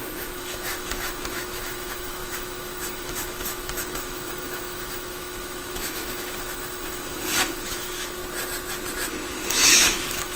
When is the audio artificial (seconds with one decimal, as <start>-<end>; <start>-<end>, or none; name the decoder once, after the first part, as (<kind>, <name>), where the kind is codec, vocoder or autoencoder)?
0.0-8.2 (autoencoder, DAC-VAE); 9.3-10.4